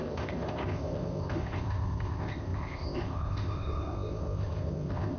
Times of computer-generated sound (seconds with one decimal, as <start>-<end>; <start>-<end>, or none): 0.0-5.2